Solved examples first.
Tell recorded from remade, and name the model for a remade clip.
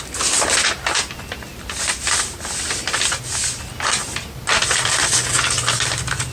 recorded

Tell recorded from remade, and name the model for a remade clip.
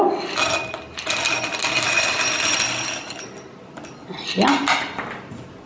recorded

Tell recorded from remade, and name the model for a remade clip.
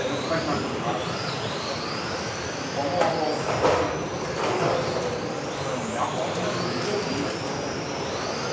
remade, vocoder, BigVGAN v2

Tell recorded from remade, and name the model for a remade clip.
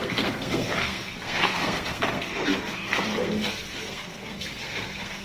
remade, codec, SNAC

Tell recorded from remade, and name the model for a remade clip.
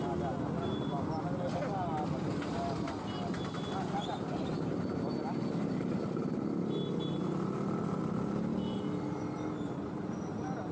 recorded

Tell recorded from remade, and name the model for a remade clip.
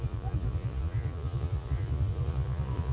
remade, vocoder, Vocos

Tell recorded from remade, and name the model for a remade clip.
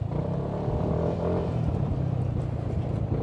remade, vocoder, BigVGAN v2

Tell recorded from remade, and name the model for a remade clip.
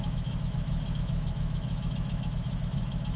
remade, autoencoder, DAC-VAE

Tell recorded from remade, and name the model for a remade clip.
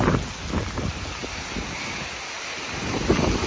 recorded